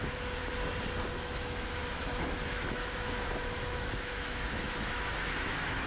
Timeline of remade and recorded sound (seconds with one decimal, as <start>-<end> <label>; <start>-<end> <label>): 0.0-0.4 remade; 0.4-1.2 recorded; 1.2-5.9 remade